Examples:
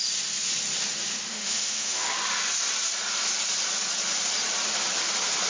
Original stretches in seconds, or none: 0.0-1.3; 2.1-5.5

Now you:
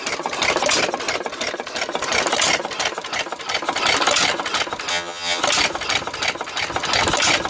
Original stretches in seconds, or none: 0.0-4.9; 5.4-7.5

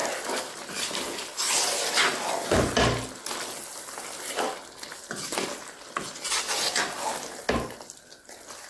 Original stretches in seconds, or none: 0.0-8.7

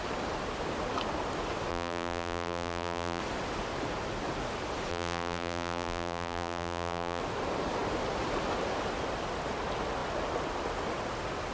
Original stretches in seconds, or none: 0.0-1.7; 3.2-4.9; 7.2-11.5

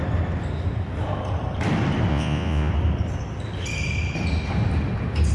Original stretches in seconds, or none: 0.0-2.1; 2.7-5.3

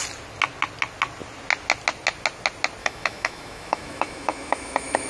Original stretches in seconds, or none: 0.0-2.8